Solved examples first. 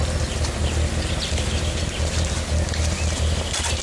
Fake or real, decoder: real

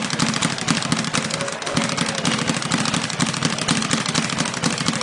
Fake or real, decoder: real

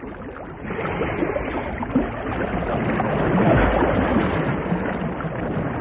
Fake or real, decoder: real